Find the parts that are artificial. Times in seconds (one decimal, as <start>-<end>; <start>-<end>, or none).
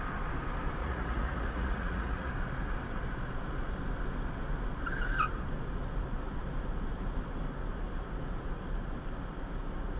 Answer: 0.8-2.3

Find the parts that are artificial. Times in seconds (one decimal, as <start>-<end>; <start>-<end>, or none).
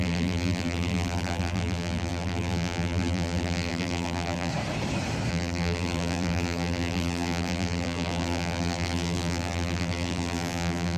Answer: 0.0-4.5; 5.3-11.0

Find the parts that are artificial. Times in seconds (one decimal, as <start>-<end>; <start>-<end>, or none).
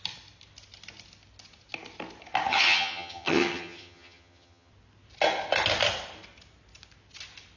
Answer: 2.5-4.7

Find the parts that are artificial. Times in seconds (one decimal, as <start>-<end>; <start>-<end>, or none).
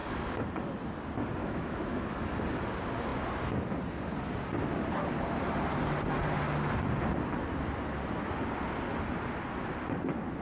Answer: 1.4-2.3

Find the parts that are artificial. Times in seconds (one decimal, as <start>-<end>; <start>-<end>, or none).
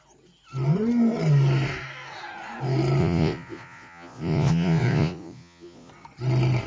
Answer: 3.0-5.9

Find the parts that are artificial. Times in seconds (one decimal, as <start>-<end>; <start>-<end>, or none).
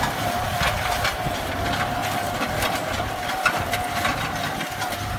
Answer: none